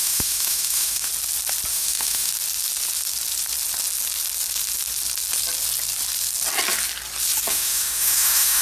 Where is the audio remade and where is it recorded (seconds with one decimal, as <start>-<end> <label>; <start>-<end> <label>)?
0.0-1.1 remade; 1.1-1.7 recorded; 1.7-2.3 remade; 2.3-7.5 recorded; 7.5-8.6 remade